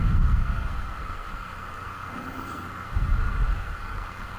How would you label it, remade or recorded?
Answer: remade